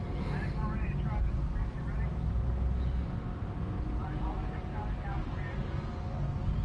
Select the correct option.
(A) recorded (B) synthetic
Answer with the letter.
A